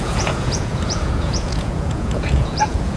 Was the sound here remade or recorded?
remade